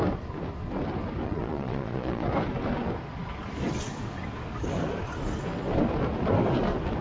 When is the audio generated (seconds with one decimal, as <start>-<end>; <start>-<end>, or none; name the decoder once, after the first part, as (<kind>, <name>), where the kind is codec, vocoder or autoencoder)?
1.2-2.3 (vocoder, Vocos)